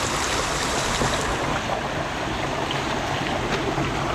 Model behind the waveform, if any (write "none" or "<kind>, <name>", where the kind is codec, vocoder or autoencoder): none